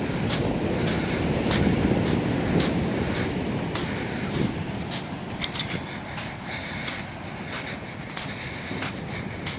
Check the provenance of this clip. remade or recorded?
recorded